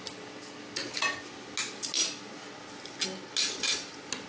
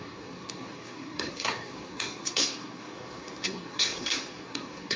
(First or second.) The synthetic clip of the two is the second